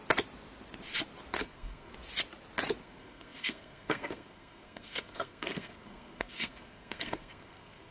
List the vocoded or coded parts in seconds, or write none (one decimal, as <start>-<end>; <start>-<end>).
1.4-1.9; 2.8-7.9